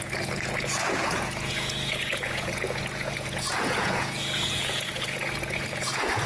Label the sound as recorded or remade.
remade